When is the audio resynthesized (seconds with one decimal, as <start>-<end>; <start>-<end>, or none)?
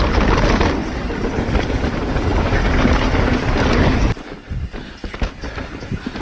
none